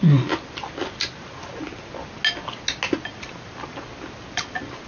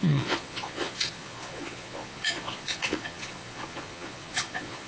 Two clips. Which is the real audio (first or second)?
first